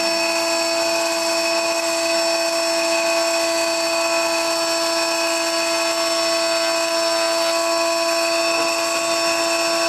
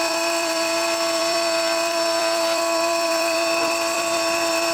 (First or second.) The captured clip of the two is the first